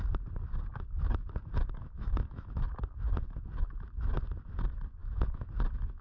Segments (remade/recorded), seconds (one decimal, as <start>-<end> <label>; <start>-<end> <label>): 0.0-1.8 recorded; 1.8-2.5 remade; 2.5-5.0 recorded; 5.0-5.5 remade; 5.5-6.0 recorded